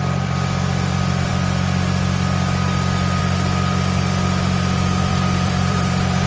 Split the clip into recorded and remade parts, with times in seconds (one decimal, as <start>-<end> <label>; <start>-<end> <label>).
0.0-1.3 remade; 1.3-3.2 recorded; 3.2-6.3 remade